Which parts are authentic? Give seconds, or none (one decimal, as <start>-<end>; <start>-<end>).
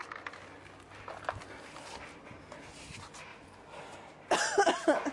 0.0-5.1